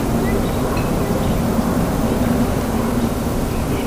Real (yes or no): yes